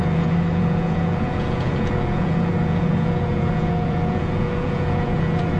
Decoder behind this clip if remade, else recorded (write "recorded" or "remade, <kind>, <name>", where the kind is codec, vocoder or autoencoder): remade, vocoder, Vocos